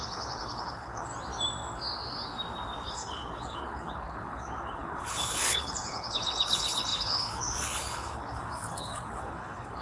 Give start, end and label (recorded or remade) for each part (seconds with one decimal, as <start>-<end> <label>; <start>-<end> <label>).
0.0-1.1 remade; 1.1-2.9 recorded; 2.9-9.8 remade